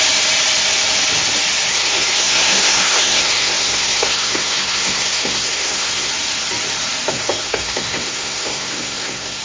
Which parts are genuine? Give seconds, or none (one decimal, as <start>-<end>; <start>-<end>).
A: 0.0-1.7; 6.1-7.1

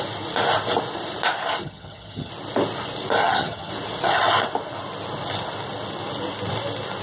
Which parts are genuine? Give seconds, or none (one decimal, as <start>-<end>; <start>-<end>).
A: 0.0-1.6; 2.3-3.2; 3.7-7.0

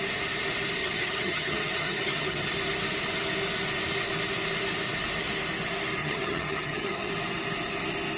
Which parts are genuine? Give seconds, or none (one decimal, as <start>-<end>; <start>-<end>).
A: 0.0-0.8; 2.5-6.0; 7.1-8.2

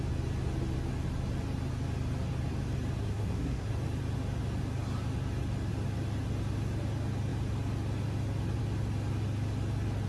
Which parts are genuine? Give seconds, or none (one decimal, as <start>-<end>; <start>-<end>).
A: 0.0-3.0; 3.7-10.1